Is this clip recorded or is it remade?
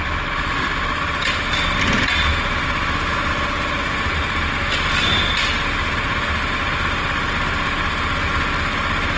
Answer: recorded